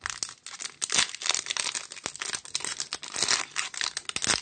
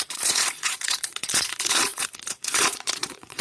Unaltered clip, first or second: first